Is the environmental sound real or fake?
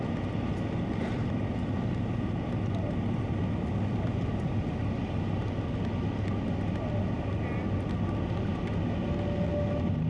real